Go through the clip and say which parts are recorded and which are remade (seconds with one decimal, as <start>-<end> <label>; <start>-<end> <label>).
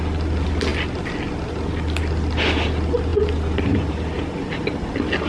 0.0-5.3 recorded